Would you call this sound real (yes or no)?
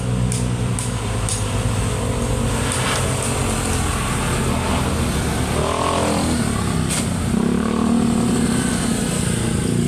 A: yes